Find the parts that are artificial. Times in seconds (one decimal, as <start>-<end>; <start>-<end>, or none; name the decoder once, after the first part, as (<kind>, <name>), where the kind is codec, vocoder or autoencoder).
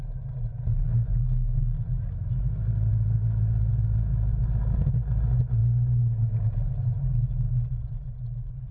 none